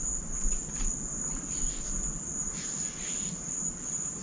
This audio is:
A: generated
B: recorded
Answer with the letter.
B